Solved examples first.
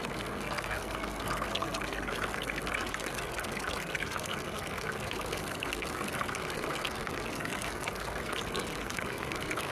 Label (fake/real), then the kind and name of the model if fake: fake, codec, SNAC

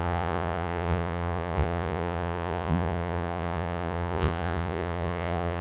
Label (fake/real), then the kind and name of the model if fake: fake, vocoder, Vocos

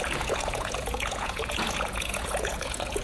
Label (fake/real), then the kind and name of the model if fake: fake, vocoder, Vocos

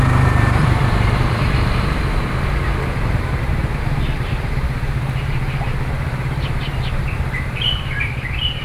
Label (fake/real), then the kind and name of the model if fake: fake, vocoder, BigVGAN v2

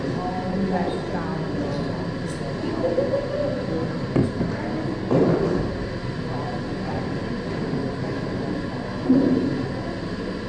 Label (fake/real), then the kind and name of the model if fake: real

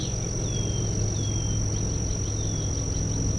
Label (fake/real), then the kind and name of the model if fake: real